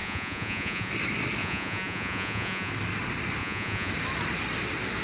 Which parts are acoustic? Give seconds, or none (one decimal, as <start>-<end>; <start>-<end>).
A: 0.9-1.4; 2.7-3.4; 3.9-5.0